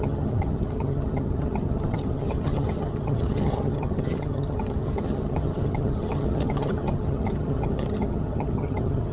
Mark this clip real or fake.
fake